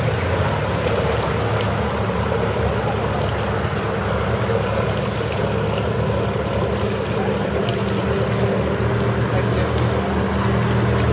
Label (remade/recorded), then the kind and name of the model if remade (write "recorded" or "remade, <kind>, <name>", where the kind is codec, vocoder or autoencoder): recorded